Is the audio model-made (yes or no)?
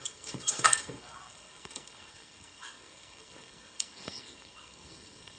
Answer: yes